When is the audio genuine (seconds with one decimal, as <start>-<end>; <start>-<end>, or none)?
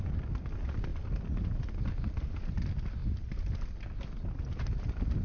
0.0-5.2